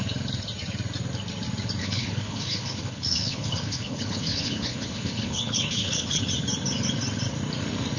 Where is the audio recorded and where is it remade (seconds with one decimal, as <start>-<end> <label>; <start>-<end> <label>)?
0.0-1.8 recorded; 1.8-6.2 remade; 6.2-8.0 recorded